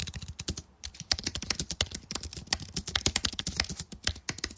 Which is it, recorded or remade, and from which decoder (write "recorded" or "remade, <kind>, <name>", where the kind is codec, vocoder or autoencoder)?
recorded